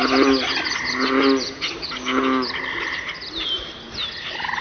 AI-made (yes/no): no